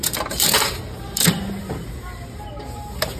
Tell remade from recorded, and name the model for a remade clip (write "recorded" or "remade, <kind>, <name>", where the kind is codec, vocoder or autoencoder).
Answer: remade, vocoder, BigVGAN v2